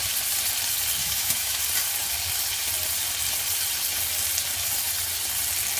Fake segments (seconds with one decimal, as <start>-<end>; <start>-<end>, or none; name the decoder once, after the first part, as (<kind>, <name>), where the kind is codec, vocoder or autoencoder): 1.0-1.6 (autoencoder, DAC-VAE)